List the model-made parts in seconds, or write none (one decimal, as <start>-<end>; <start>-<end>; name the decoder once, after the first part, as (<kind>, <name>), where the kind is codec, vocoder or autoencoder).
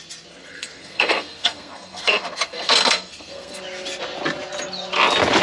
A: 0.4-3.6 (codec, SNAC)